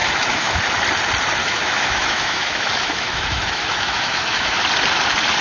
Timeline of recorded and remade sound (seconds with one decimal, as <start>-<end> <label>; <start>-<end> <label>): 0.0-0.6 remade; 0.6-1.4 recorded; 1.4-4.6 remade; 4.6-5.4 recorded